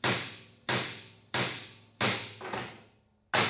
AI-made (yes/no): no